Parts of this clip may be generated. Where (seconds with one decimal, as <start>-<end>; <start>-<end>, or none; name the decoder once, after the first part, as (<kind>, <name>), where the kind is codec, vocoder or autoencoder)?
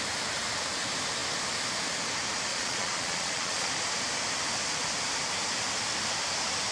2.5-3.7 (vocoder, Vocos)